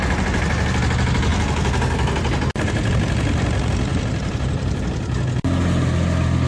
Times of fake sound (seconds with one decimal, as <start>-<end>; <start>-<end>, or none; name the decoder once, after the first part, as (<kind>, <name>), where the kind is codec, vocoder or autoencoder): 3.9-4.8 (vocoder, BigVGAN v2)